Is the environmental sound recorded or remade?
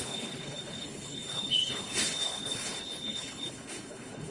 remade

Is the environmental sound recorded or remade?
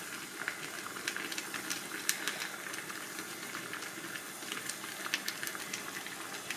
recorded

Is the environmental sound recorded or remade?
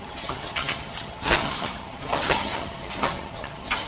remade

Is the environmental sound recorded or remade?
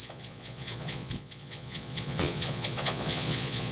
remade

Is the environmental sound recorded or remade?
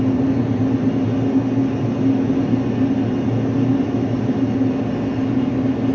recorded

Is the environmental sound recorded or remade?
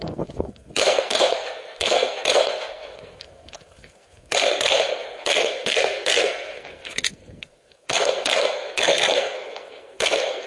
remade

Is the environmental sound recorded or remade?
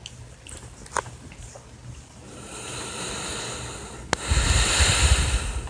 recorded